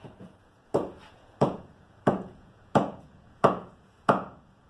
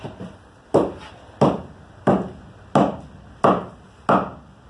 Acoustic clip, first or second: second